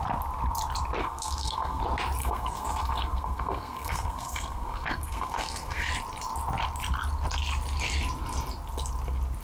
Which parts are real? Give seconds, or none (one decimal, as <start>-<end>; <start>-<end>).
0.0-1.0; 1.8-2.2; 5.9-9.4